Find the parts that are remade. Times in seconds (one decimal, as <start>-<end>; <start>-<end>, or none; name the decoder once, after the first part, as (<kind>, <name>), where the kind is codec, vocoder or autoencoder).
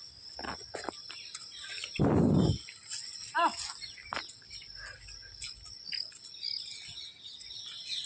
none